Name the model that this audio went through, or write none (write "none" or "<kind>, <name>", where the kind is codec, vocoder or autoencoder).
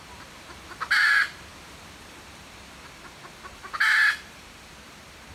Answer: vocoder, BigVGAN v2